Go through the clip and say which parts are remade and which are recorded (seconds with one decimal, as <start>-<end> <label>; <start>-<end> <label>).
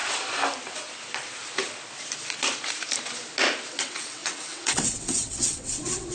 0.0-3.7 recorded; 3.7-6.1 remade